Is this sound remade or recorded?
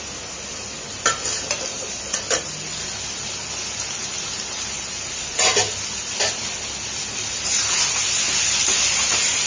recorded